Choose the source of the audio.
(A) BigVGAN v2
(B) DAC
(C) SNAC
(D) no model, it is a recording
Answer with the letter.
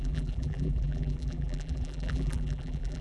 A